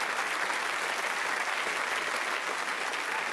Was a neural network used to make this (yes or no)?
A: no